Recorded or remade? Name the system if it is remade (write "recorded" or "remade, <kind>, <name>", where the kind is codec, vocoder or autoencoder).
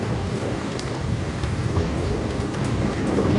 remade, codec, DAC